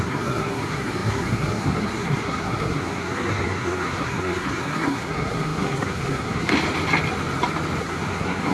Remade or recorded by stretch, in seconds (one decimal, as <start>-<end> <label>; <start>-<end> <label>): 0.0-6.5 remade; 6.5-7.8 recorded; 7.8-8.5 remade